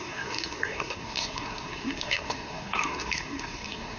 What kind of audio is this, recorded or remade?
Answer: remade